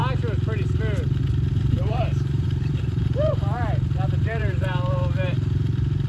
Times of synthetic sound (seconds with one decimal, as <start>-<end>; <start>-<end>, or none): 1.7-6.1

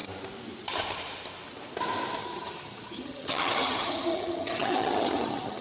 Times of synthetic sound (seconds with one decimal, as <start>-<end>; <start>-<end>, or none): 2.2-5.6

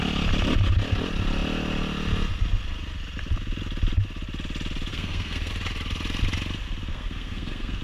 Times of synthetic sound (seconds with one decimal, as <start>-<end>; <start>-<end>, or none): 4.9-5.5; 6.9-7.8

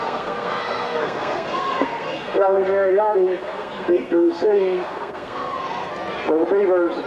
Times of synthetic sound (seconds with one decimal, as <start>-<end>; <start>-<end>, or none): 0.0-5.9